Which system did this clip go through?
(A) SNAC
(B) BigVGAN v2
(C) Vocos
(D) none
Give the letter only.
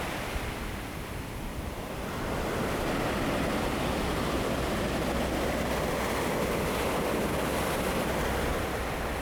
D